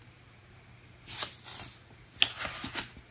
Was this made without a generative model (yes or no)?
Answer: yes